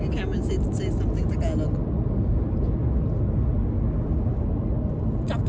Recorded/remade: recorded